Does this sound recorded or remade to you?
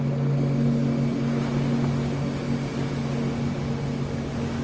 recorded